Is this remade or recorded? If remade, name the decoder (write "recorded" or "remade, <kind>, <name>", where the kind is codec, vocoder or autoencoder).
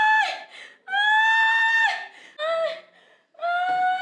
recorded